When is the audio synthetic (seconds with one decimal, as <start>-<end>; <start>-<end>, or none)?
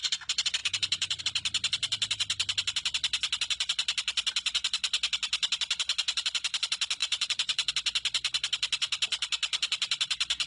0.6-1.2; 7.0-7.7